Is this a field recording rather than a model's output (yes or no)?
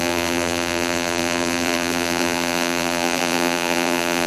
no